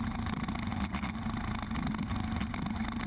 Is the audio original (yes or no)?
yes